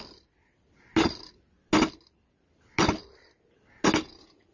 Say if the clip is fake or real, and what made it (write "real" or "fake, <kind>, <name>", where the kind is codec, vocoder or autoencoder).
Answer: real